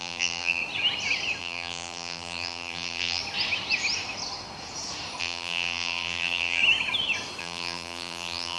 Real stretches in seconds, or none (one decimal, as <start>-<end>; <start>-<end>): 0.6-1.4; 3.2-5.2; 6.6-7.4